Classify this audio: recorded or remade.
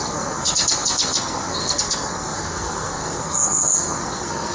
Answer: remade